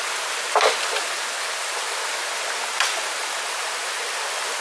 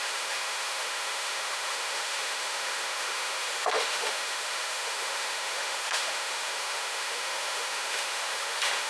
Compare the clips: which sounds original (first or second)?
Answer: first